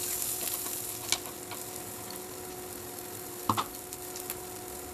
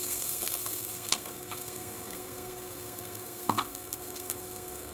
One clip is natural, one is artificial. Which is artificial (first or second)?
second